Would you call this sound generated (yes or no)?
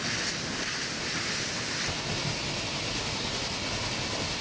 no